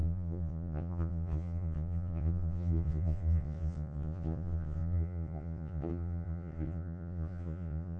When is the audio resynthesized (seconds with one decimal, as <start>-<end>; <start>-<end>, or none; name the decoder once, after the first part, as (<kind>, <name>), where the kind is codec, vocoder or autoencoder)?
0.0-8.0 (vocoder, Vocos)